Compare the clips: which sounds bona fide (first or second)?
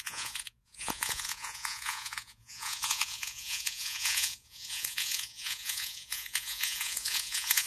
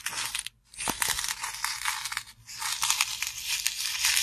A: second